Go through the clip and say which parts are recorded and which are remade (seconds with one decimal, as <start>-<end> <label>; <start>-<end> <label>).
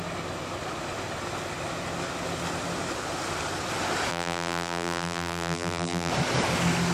0.0-4.1 recorded; 4.1-6.1 remade; 6.1-6.9 recorded